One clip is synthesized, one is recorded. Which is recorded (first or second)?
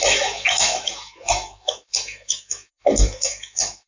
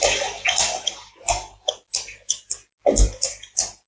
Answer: second